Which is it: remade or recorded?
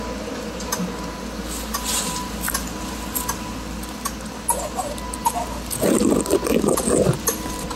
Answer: recorded